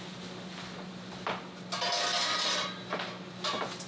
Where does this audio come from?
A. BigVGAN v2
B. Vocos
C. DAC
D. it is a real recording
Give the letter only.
D